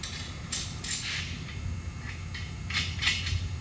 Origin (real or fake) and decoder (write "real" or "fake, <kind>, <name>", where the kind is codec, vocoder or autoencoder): real